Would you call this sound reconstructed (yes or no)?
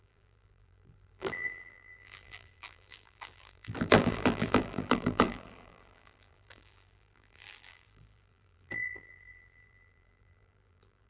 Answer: yes